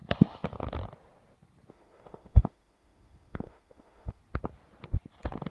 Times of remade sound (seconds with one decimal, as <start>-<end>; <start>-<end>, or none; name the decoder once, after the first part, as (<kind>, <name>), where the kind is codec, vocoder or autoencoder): 1.7-4.2 (autoencoder, DAC-VAE)

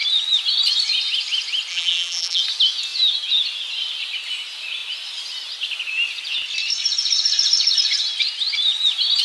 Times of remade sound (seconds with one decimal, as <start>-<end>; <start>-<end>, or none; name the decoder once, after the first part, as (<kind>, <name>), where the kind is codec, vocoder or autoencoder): 1.7-2.4 (vocoder, BigVGAN v2)

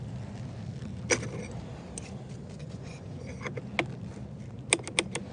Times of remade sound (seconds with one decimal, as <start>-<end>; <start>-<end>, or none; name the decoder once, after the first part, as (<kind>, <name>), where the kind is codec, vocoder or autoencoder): 2.6-3.2 (vocoder, Vocos)